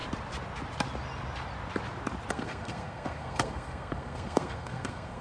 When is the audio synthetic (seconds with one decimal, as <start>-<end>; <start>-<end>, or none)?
2.3-5.2